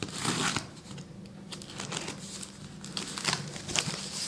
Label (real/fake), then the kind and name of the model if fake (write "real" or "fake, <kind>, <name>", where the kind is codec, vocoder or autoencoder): real